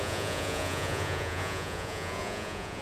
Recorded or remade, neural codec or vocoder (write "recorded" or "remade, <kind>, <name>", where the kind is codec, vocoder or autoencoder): remade, vocoder, Vocos